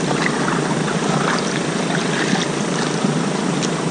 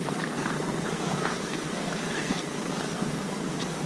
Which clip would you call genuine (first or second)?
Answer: first